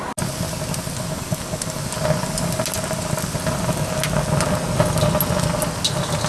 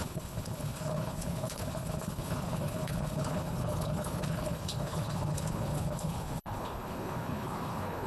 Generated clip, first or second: second